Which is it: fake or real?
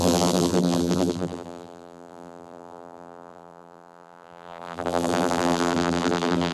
fake